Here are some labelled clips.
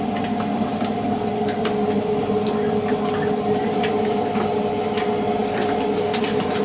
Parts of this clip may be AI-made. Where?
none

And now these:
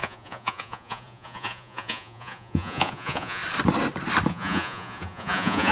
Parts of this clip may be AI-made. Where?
0.0-3.4 (vocoder, Vocos); 4.3-5.7

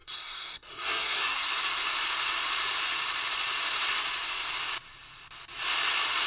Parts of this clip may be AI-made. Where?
0.0-1.5 (codec, SNAC)

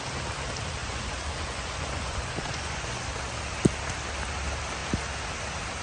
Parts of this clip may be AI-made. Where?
0.8-3.1 (vocoder, Vocos)

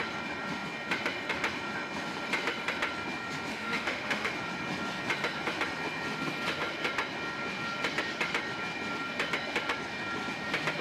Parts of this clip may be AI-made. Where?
3.5-4.3 (autoencoder, DAC-VAE)